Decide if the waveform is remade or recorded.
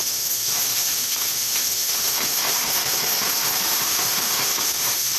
remade